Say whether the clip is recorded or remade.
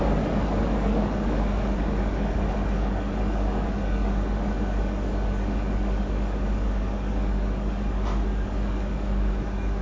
remade